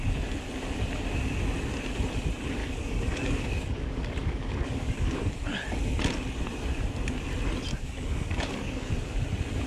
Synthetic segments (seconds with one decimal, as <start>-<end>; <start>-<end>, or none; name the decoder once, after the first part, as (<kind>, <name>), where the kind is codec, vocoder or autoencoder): 2.6-5.3 (codec, DAC); 7.7-8.9